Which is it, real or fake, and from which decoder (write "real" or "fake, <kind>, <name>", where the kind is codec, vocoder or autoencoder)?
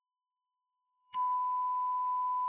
fake, codec, SNAC